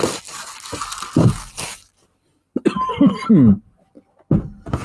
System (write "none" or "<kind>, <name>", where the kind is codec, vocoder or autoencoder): none